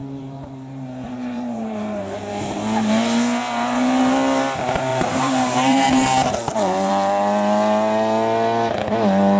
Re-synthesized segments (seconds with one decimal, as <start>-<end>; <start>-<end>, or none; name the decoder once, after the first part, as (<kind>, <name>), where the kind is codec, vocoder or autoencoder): 0.0-2.3 (vocoder, BigVGAN v2); 4.9-6.9